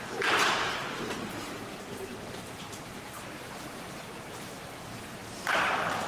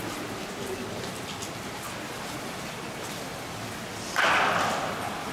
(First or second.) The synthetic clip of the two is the first